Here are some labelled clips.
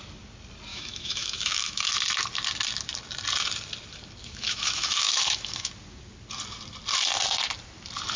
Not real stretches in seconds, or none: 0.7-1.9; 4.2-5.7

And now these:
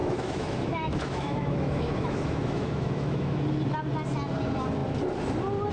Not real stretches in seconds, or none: 0.0-3.4

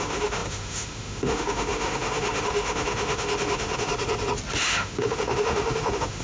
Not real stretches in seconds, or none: 0.0-3.9; 4.6-6.2

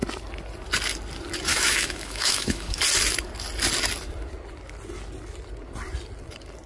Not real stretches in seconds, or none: 1.5-2.8

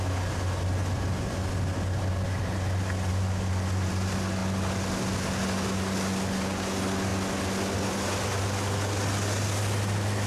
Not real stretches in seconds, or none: none